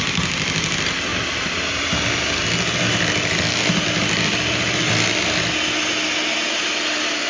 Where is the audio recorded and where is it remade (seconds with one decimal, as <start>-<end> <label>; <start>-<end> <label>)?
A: 0.0-7.3 recorded